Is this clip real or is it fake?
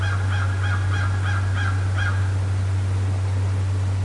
real